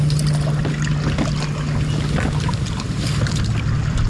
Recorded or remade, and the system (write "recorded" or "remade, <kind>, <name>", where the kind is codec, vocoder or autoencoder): recorded